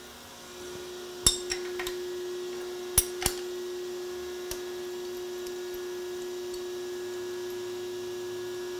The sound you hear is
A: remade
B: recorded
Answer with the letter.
B